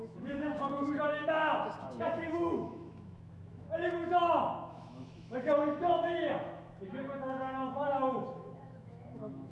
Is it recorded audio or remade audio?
remade